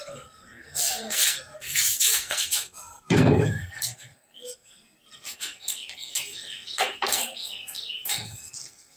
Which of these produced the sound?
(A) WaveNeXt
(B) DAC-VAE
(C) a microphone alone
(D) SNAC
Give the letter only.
D